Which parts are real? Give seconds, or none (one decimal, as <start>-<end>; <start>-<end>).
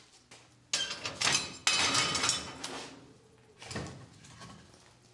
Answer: 0.0-5.1